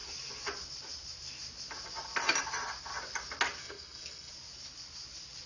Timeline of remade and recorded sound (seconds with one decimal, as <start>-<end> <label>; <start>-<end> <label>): 0.0-3.6 recorded; 3.6-4.3 remade; 4.3-5.5 recorded